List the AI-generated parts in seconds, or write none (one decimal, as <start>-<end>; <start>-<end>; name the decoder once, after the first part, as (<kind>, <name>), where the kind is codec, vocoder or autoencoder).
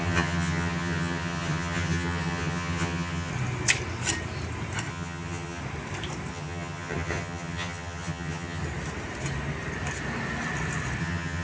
0.0-3.3 (vocoder, HiFi-GAN); 4.9-5.6; 6.3-8.6; 11.0-11.4